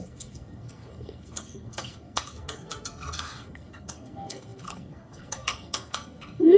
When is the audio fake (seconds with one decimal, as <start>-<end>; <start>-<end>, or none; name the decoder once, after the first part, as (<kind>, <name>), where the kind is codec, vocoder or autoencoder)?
0.0-6.6 (codec, SNAC)

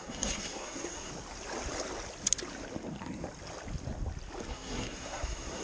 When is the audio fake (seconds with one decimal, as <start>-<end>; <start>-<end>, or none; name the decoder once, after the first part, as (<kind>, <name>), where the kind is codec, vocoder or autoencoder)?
0.0-1.1 (codec, SNAC); 4.5-5.6

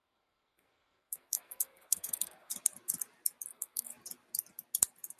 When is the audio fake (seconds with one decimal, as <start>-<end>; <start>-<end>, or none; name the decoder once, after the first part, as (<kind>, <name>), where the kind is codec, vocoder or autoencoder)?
0.0-2.5 (codec, SNAC); 3.5-3.9

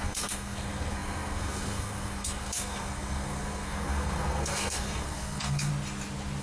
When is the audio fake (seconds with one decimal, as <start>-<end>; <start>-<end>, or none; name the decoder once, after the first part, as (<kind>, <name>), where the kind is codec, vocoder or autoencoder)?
0.0-5.7 (codec, SNAC)